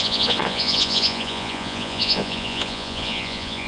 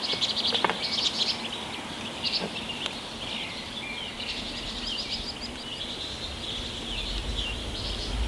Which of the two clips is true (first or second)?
second